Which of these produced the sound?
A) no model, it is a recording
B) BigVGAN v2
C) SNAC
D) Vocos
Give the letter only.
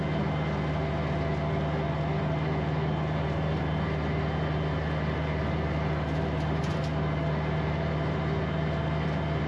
A